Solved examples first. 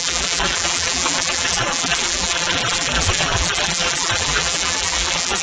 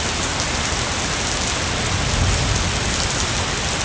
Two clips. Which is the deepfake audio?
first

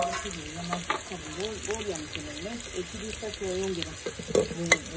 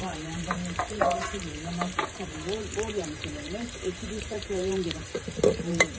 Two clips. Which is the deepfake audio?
second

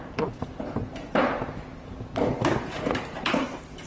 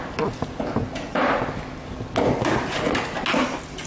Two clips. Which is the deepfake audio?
first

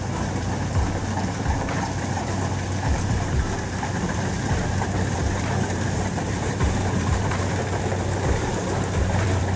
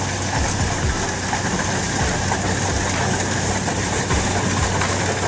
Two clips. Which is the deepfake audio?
first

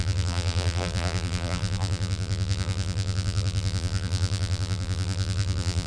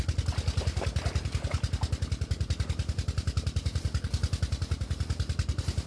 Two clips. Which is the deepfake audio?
first